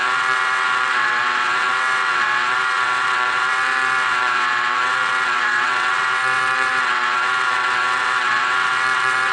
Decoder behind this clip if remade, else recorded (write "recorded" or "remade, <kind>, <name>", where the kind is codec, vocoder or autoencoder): remade, vocoder, WaveNeXt